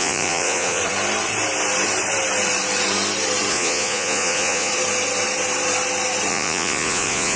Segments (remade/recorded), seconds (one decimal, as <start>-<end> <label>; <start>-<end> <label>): 0.0-0.8 remade; 0.8-3.5 recorded; 3.5-4.7 remade; 4.7-6.3 recorded; 6.3-7.4 remade